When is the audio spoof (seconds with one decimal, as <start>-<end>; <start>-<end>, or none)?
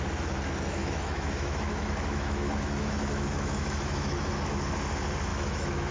0.8-4.3; 5.3-5.9